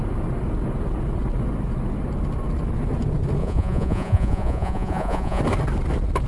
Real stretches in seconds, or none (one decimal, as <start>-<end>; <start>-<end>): 0.0-3.4; 5.4-6.3